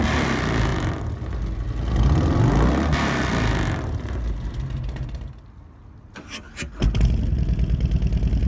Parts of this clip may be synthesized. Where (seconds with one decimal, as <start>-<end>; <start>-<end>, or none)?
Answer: none